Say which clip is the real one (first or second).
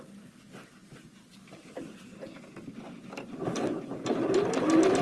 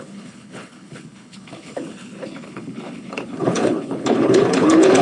first